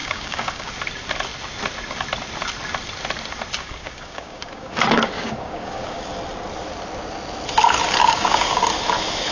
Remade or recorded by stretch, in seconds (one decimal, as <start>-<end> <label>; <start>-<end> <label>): 0.0-0.7 remade; 0.7-3.6 recorded; 3.6-6.0 remade; 6.0-8.0 recorded; 8.0-8.6 remade; 8.6-9.3 recorded